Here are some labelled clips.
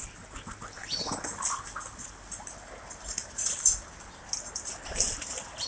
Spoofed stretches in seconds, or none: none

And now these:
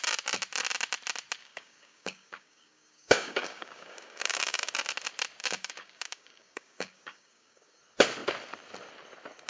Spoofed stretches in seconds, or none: 1.4-4.7 (codec, DAC); 5.4-7.8

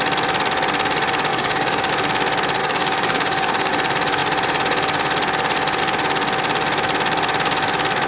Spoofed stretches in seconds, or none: 1.3-1.9 (codec, DAC); 2.6-3.7

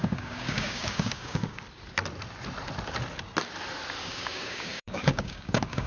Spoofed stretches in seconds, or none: 0.0-1.6 (codec, DAC); 4.0-5.9

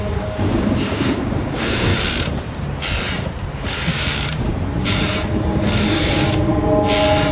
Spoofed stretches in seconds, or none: 0.0-1.9 (codec, DAC); 3.5-4.5; 5.4-6.5

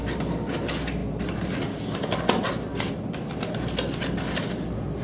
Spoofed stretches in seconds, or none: none

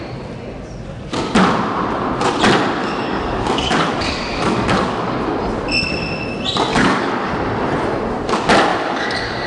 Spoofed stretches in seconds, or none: 2.8-5.1 (codec, DAC); 6.7-7.3; 8.7-9.5